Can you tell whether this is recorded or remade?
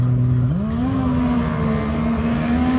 recorded